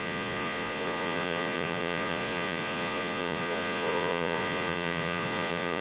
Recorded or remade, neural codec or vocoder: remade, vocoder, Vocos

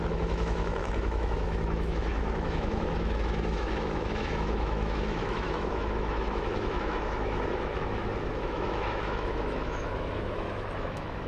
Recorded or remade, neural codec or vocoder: remade, autoencoder, DAC-VAE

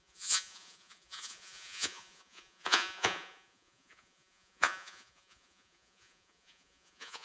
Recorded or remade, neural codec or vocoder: remade, vocoder, Vocos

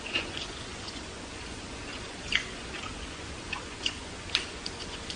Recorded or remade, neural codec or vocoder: remade, vocoder, Vocos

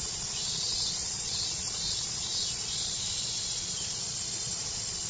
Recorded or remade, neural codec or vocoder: remade, vocoder, Vocos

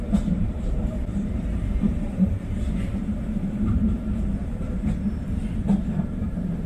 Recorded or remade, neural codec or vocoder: remade, vocoder, BigVGAN v2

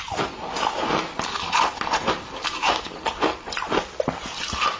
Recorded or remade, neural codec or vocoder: recorded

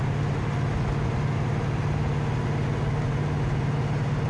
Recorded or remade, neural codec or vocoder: recorded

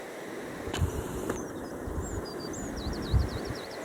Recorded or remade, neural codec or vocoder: remade, vocoder, BigVGAN v2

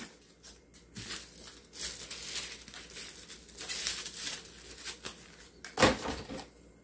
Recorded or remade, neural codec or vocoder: recorded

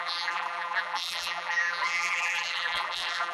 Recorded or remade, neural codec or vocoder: remade, vocoder, BigVGAN v2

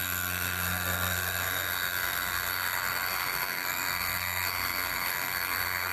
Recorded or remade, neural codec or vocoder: remade, codec, SNAC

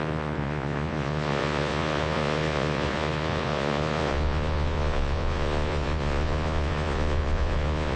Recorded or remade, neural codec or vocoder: remade, vocoder, Vocos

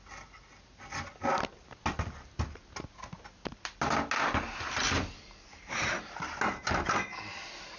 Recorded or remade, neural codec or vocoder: recorded